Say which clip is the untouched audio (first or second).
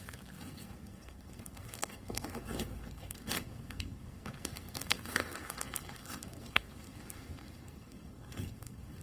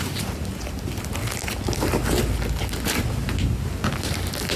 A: second